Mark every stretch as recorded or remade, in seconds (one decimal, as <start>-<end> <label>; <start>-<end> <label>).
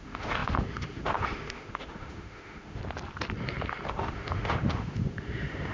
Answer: 0.0-2.8 remade; 2.8-3.9 recorded; 3.9-5.7 remade